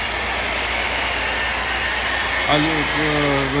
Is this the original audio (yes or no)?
yes